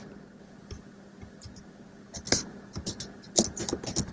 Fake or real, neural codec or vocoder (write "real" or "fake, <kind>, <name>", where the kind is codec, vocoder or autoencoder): real